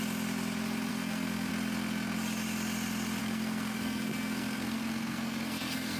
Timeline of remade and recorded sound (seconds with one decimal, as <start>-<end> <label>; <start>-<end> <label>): 0.0-0.9 recorded; 0.9-1.5 remade; 1.5-3.2 recorded; 3.2-6.0 remade